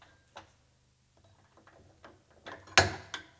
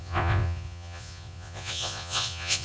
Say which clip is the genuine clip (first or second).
first